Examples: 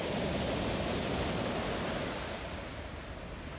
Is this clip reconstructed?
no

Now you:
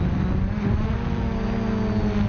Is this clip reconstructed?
no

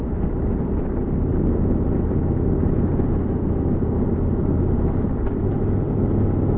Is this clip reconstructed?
no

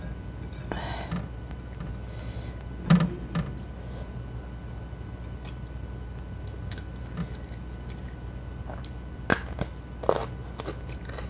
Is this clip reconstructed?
no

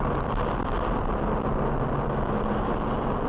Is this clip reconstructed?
no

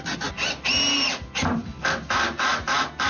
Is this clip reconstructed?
no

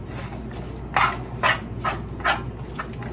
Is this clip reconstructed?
no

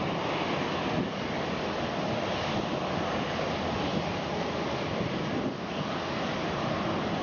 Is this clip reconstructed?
no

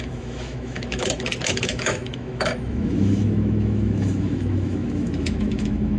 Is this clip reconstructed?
yes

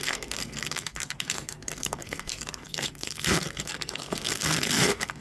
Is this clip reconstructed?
yes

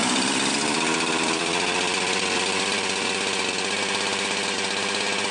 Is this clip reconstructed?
yes